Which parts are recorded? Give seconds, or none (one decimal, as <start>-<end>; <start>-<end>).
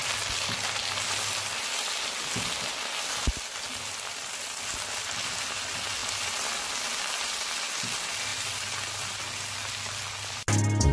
0.0-10.9